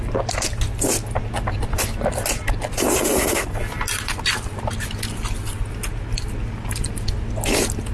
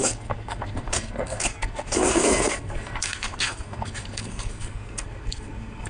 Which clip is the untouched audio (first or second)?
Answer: first